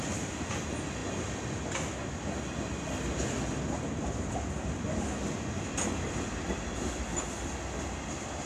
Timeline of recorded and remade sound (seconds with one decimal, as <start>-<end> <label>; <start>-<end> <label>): 0.0-8.5 recorded